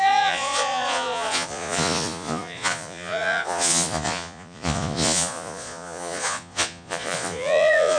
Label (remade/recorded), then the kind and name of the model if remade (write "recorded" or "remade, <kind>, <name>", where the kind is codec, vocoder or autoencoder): remade, vocoder, Vocos